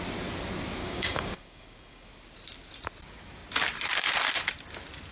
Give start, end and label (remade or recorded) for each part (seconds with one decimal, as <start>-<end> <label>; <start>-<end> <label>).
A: 0.0-0.8 recorded; 0.8-2.1 remade; 2.1-5.1 recorded

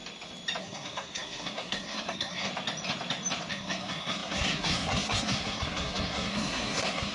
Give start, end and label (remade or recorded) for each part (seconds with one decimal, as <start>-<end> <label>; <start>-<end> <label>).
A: 0.0-0.6 recorded; 0.6-2.5 remade; 2.5-3.5 recorded; 3.5-7.1 remade

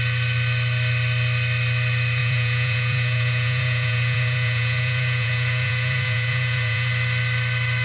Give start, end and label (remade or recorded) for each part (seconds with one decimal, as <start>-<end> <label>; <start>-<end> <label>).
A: 0.0-2.2 recorded; 2.2-6.9 remade; 6.9-7.8 recorded

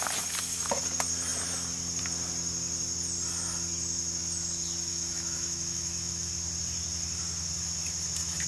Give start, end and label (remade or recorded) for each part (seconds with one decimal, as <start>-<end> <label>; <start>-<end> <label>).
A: 0.0-4.9 recorded; 4.9-6.3 remade; 6.3-8.5 recorded

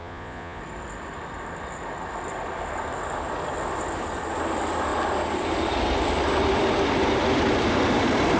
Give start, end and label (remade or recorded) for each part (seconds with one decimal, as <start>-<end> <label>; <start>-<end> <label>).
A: 0.0-0.6 remade; 0.6-8.4 recorded

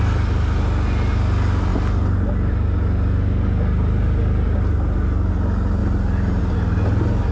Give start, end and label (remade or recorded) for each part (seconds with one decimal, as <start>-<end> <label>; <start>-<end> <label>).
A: 0.0-7.3 recorded